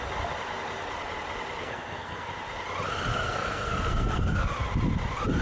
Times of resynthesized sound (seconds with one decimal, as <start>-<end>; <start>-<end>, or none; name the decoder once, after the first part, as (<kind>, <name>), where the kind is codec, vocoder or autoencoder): 1.6-2.3 (codec, SNAC); 3.1-4.5